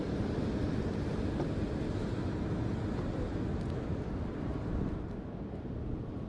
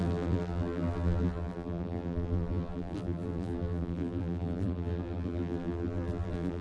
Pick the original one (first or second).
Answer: first